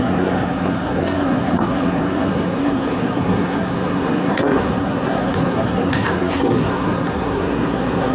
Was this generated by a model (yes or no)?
yes